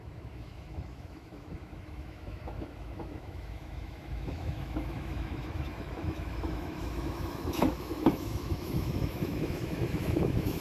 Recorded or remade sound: remade